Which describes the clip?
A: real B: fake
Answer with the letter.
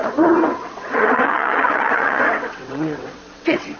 B